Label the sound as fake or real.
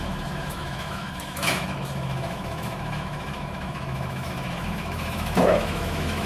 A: fake